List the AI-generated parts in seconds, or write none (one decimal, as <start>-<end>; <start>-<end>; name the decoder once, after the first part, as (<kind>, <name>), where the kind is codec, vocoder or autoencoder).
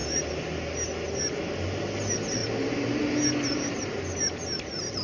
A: none